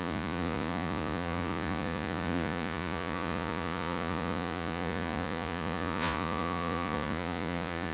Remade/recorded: remade